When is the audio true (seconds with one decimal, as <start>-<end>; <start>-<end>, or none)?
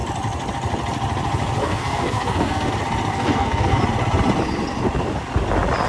0.0-1.6; 2.7-3.1; 3.8-5.9